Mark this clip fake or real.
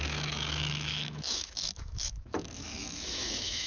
fake